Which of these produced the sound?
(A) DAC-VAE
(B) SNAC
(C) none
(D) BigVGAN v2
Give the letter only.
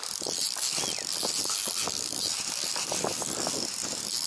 D